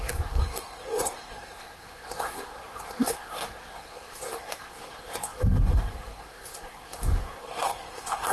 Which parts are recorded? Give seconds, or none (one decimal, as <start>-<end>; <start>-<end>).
none

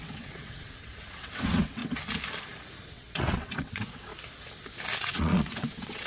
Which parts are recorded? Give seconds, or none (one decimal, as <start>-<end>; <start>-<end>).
1.8-2.9; 4.1-5.0

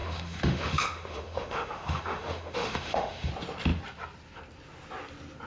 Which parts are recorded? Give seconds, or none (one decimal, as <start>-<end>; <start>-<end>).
3.3-5.5

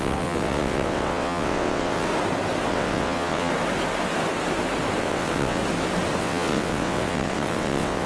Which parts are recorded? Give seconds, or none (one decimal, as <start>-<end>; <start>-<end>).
2.1-2.7; 3.5-5.0; 5.6-6.2